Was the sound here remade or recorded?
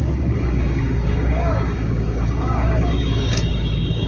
remade